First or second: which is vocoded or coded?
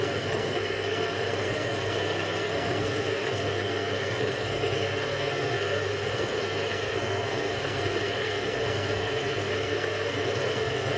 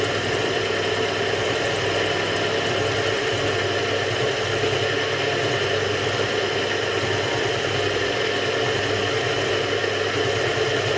first